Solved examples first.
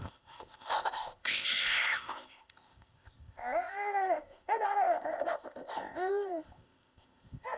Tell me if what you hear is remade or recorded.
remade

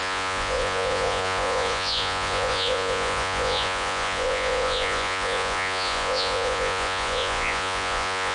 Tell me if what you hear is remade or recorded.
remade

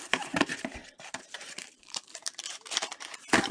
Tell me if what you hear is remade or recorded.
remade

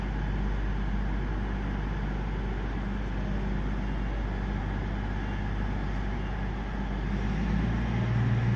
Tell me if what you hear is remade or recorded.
recorded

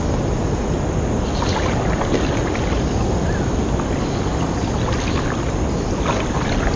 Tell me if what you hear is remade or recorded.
recorded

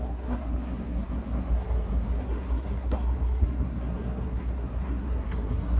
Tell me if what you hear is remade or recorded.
remade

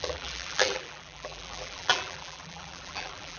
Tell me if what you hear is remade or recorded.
remade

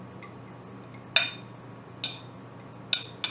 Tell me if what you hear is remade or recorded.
recorded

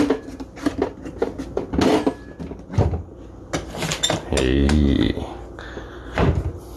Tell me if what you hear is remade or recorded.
recorded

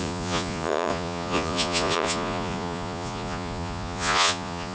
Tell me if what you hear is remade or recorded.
remade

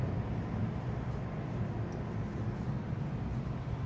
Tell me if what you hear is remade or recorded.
recorded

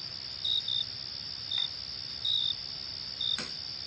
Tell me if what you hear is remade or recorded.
recorded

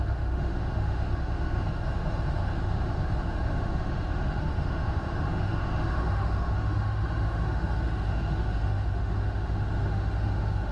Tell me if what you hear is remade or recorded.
remade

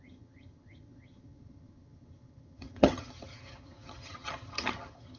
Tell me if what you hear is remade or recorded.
remade